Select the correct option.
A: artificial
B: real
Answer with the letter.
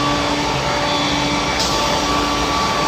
B